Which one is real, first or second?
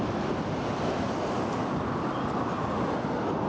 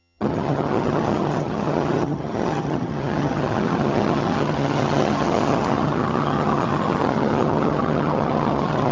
first